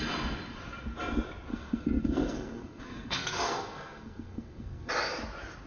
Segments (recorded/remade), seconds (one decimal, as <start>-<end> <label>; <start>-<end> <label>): 0.0-1.5 recorded; 1.5-4.9 remade; 4.9-5.7 recorded

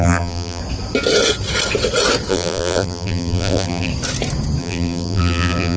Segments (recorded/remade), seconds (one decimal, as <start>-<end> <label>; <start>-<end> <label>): 0.0-0.6 remade; 0.6-2.3 recorded; 2.3-3.9 remade; 3.9-4.6 recorded; 4.6-5.8 remade

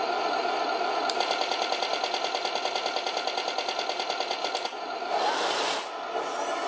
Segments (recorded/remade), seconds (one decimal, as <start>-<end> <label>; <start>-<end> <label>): 0.0-6.7 recorded